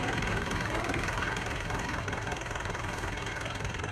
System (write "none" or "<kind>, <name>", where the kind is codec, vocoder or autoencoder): codec, SNAC